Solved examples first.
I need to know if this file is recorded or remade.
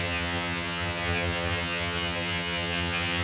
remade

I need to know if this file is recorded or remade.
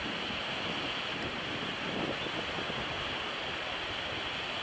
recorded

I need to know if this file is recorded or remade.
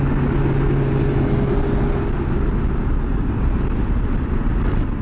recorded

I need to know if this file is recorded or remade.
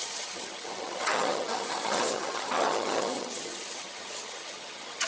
remade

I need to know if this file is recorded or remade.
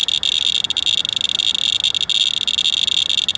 recorded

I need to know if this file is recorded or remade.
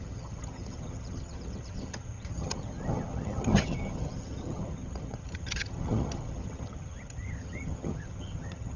remade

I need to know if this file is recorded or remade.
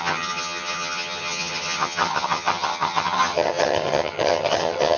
remade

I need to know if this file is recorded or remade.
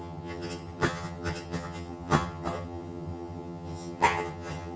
remade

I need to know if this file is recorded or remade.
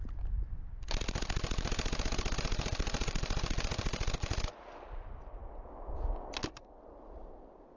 recorded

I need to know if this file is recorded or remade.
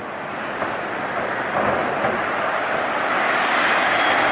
recorded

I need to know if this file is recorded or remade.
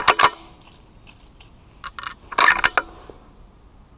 recorded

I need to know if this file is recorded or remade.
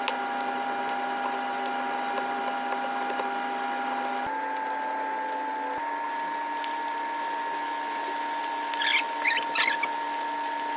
recorded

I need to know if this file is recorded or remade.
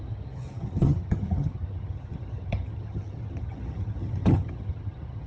remade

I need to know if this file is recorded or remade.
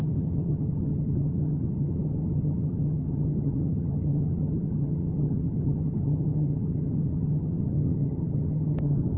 remade